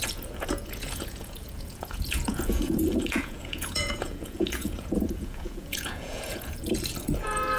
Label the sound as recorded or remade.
remade